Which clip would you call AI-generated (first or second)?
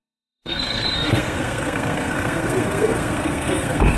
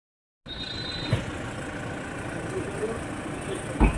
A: first